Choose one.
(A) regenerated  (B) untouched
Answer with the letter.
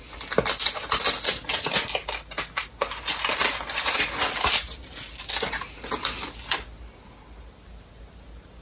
B